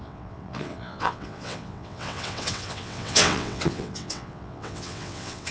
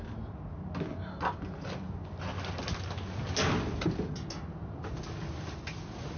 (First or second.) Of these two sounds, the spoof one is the first